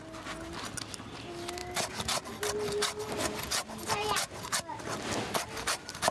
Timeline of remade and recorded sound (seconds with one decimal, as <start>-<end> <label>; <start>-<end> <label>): 0.0-6.1 recorded